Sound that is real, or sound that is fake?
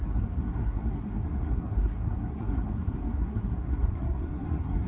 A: fake